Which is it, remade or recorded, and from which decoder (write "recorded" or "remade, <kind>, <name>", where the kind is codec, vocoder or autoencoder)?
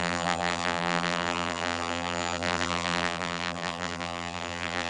remade, vocoder, BigVGAN v2